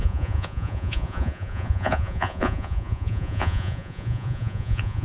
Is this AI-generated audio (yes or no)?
yes